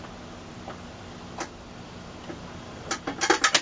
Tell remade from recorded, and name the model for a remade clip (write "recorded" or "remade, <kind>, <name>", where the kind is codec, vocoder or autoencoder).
recorded